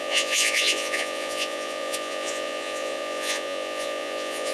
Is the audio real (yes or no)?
no